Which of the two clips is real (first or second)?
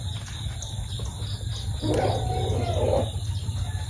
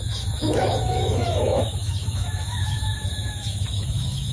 first